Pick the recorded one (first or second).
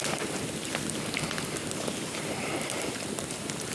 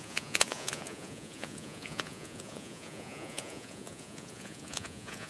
first